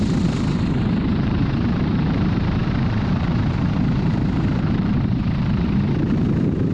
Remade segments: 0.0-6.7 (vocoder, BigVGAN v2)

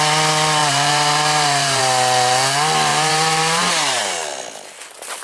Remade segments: 0.6-1.8 (vocoder, BigVGAN v2); 2.9-4.0